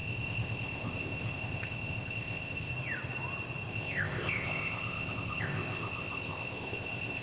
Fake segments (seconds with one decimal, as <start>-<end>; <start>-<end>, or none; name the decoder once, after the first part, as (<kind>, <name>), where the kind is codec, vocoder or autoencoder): 0.0-2.7 (codec, ZipCodec); 3.7-7.2